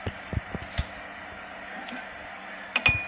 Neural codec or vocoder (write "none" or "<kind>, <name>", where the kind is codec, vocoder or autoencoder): none